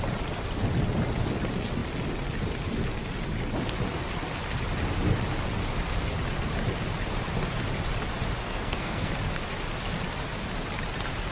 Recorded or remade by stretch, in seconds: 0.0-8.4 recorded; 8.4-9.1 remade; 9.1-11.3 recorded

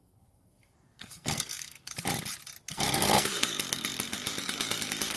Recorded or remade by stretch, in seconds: 0.0-1.9 remade; 1.9-2.7 recorded; 2.7-5.2 remade

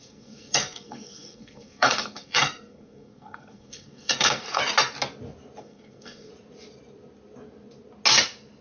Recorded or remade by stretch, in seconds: 0.0-4.6 remade; 4.6-5.6 recorded; 5.6-6.3 remade; 6.3-8.6 recorded

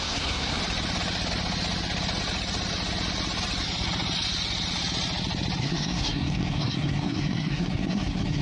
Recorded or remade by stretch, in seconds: 0.0-0.6 remade; 0.6-5.6 recorded; 5.6-8.4 remade

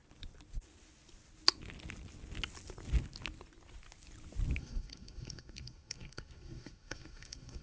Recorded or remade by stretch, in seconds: 0.0-4.6 recorded; 4.6-7.6 remade

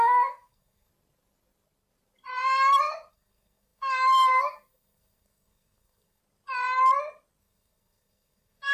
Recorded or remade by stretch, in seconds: 0.0-0.9 remade; 0.9-3.1 recorded; 3.1-6.2 remade; 6.2-7.4 recorded; 7.4-8.7 remade

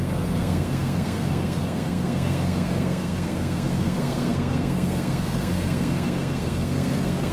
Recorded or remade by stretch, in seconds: 0.0-7.3 remade

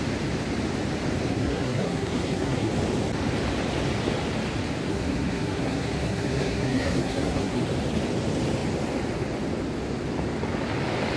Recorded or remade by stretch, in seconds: 0.0-1.3 recorded; 1.3-2.7 remade; 2.7-4.9 recorded; 4.9-7.6 remade; 7.6-11.2 recorded